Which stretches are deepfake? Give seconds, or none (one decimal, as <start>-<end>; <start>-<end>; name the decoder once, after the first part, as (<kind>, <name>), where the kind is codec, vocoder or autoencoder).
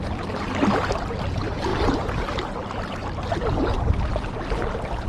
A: none